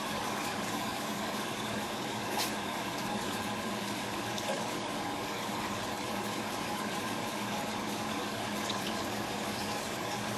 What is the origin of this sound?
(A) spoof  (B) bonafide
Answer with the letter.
A